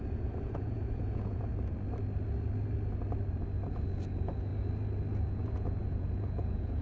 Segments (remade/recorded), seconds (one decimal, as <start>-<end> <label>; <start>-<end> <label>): 0.0-1.5 remade; 1.5-3.7 recorded; 3.7-4.5 remade; 4.5-5.2 recorded; 5.2-6.8 remade